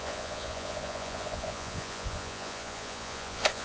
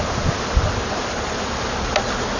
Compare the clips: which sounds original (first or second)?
second